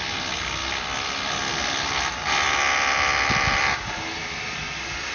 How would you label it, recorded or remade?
recorded